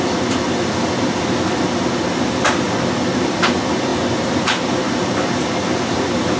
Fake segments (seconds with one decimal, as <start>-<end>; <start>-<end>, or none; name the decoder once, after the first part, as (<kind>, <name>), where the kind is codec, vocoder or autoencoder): 3.9-4.9 (vocoder, BigVGAN v2)